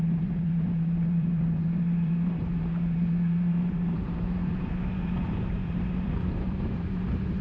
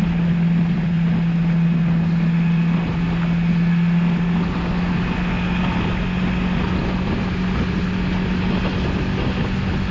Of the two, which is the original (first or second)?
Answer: second